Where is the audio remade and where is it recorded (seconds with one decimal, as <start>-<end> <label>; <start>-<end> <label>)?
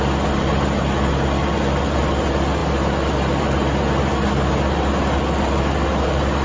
0.0-6.4 recorded